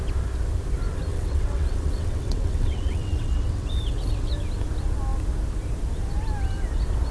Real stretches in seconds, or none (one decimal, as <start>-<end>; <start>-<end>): 0.0-1.1; 4.3-7.1